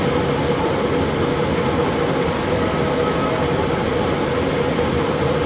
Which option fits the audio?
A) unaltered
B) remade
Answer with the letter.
A